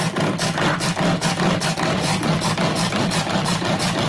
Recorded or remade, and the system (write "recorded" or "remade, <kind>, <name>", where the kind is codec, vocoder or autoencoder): recorded